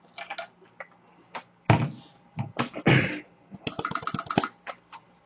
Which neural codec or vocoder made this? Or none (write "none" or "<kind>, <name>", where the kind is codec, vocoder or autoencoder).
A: none